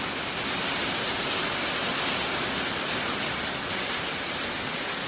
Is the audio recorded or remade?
recorded